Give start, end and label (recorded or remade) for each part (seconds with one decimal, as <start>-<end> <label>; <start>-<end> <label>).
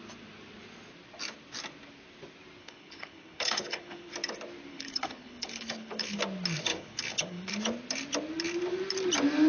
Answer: 0.0-2.6 recorded; 2.6-4.1 remade; 4.1-4.7 recorded; 4.7-6.2 remade; 6.2-6.7 recorded; 6.7-7.5 remade; 7.5-9.5 recorded